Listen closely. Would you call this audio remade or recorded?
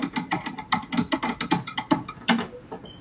recorded